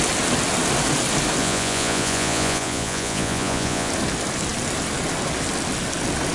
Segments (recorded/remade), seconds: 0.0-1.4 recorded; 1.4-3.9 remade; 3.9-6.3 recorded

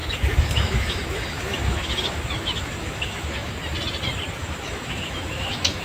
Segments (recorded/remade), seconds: 0.0-3.5 remade; 3.5-4.4 recorded; 4.4-5.8 remade

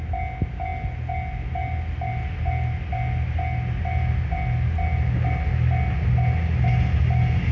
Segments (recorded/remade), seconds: 0.0-7.5 recorded